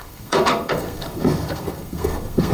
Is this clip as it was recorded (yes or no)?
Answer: no